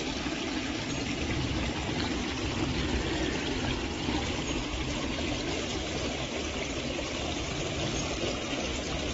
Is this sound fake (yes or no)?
no